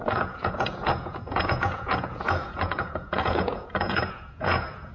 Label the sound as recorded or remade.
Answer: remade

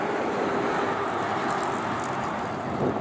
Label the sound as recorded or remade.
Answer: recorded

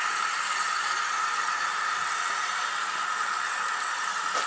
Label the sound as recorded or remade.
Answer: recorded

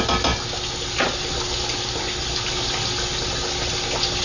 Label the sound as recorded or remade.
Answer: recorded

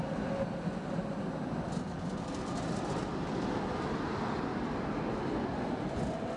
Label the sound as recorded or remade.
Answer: recorded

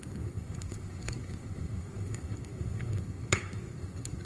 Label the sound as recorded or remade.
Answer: remade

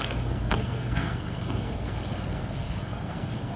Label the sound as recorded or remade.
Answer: remade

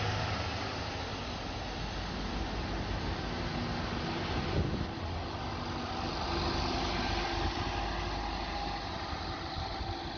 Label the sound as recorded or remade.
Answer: recorded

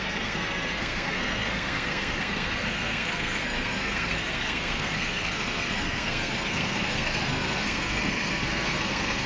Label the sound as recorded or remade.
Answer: remade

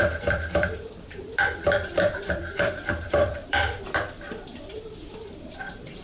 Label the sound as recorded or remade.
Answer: remade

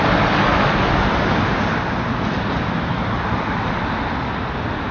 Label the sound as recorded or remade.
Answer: recorded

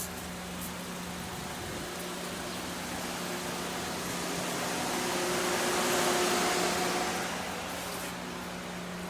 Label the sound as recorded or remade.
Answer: recorded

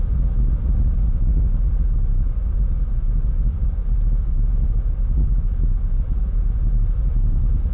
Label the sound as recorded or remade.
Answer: recorded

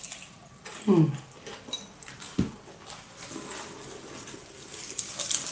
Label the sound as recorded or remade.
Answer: recorded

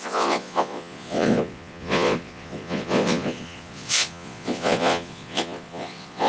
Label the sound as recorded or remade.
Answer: remade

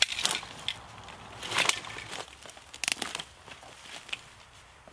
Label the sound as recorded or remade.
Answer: recorded